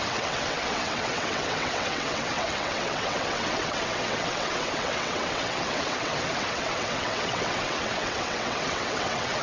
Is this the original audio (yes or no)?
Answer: no